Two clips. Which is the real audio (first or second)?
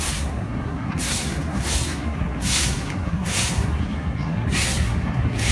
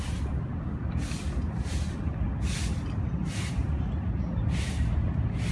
second